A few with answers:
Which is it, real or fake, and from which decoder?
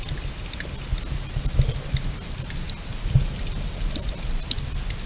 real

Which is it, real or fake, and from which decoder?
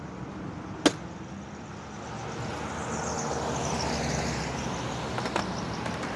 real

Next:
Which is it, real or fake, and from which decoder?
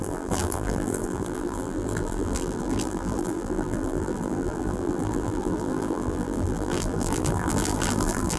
fake, vocoder, BigVGAN v2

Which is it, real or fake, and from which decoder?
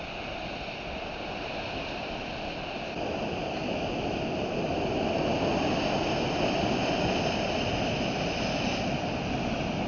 real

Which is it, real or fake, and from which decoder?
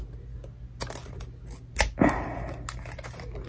real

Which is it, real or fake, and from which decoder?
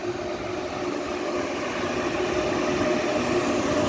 real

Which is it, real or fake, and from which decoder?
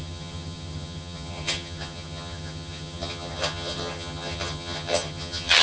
fake, vocoder, HiFi-GAN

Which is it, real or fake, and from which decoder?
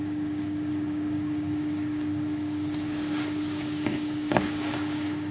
fake, codec, DAC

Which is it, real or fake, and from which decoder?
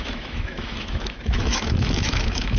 fake, autoencoder, DAC-VAE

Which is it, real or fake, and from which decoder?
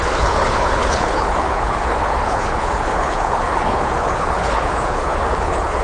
fake, codec, HILCodec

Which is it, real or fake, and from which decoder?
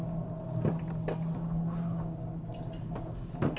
real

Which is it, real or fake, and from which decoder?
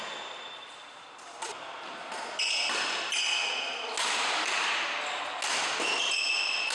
real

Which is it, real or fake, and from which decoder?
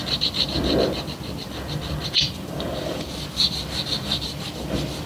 fake, vocoder, BigVGAN v2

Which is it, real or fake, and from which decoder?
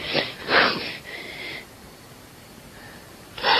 real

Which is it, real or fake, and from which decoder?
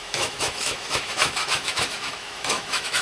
fake, autoencoder, DAC-VAE